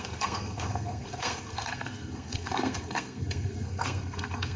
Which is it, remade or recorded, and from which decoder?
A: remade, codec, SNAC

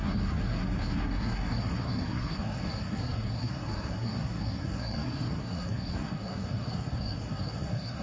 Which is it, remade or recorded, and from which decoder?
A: remade, codec, SNAC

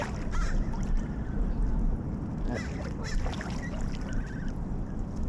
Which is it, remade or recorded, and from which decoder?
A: recorded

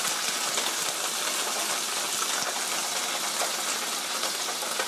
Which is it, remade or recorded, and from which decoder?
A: recorded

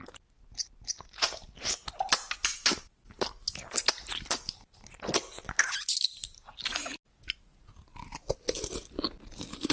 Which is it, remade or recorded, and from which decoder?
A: recorded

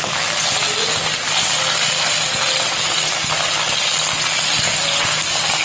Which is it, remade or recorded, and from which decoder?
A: recorded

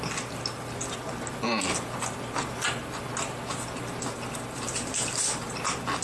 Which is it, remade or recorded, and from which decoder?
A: recorded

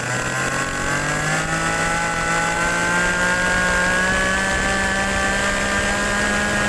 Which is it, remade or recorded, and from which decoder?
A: recorded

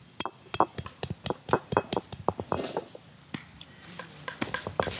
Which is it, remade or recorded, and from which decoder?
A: recorded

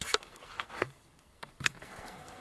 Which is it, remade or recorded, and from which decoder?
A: remade, codec, SNAC